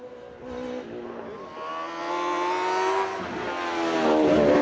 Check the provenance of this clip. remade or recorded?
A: recorded